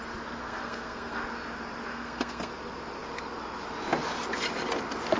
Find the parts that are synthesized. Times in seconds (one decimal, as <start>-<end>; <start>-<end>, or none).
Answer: 0.4-1.2; 1.9-2.5